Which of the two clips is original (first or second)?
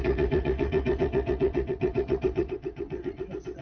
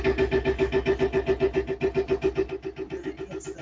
second